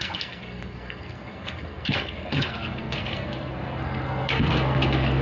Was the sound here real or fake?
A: fake